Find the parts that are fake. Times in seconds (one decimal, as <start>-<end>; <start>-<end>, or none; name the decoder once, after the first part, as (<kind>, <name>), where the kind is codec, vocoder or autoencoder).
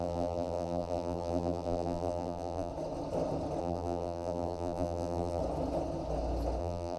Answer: 0.0-2.7 (vocoder, BigVGAN v2); 3.6-5.4; 6.6-7.0